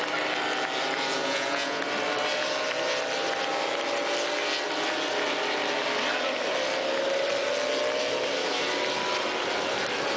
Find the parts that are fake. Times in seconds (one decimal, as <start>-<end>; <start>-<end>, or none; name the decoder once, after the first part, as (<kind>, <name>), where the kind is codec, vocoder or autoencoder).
1.2-1.8 (vocoder, Vocos)